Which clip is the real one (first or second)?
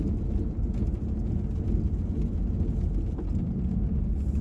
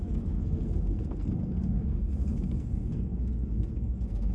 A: first